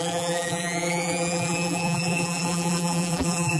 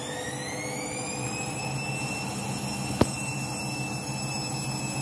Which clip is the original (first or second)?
second